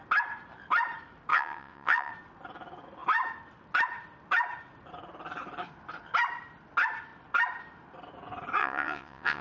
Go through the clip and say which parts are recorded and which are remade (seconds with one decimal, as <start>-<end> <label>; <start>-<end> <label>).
0.0-1.3 recorded; 1.3-2.1 remade; 2.1-8.6 recorded; 8.6-9.4 remade